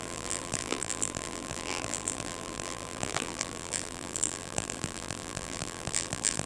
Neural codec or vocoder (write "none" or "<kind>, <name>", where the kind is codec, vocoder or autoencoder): vocoder, BigVGAN v2